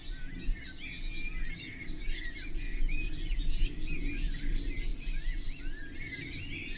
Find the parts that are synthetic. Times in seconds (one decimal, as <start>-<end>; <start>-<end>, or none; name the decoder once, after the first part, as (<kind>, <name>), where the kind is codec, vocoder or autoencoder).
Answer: none